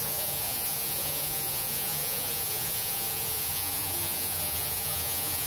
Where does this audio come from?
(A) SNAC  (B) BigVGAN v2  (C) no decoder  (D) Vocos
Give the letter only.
D